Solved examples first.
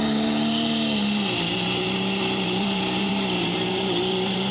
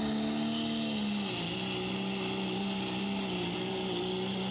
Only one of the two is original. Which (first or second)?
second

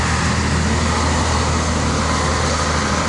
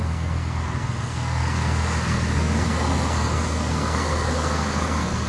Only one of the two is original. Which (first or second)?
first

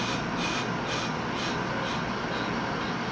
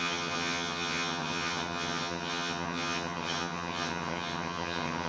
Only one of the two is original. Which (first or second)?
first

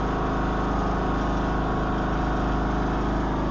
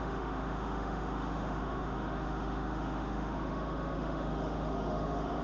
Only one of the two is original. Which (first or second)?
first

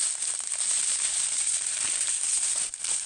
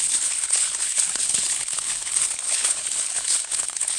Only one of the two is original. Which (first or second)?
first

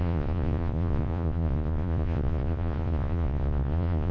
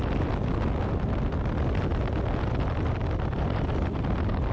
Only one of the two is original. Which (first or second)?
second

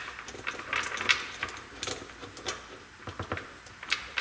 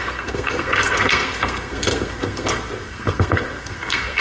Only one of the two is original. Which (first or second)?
first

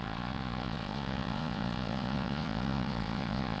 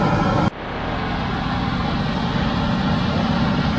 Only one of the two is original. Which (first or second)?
second